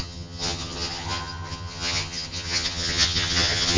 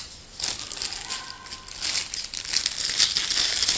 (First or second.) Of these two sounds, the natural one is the second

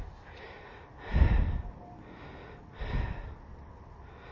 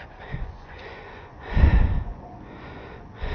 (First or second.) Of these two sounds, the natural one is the first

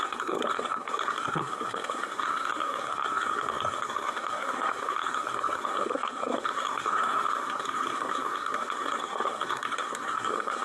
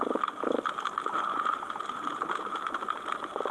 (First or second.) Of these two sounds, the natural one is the second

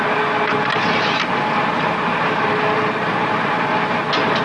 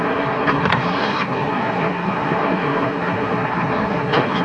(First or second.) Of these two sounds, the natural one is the first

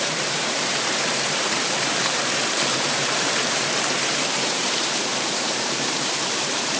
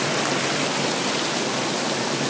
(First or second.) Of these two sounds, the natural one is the second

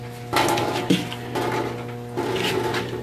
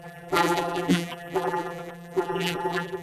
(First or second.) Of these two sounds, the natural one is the first